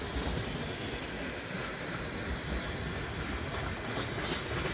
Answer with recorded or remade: recorded